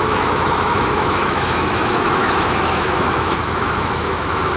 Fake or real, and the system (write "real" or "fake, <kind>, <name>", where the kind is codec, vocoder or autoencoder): fake, autoencoder, DAC-VAE